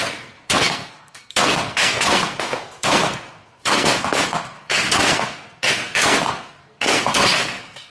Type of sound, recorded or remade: remade